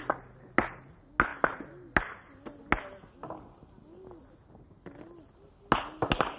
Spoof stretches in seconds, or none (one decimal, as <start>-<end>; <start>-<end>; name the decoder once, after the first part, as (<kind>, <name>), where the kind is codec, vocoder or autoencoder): none